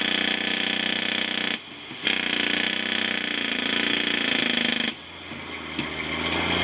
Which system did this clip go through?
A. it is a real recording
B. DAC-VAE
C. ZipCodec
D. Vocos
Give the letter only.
A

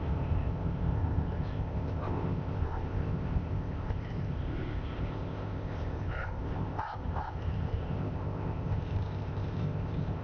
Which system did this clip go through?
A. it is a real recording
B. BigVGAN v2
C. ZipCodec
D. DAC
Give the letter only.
C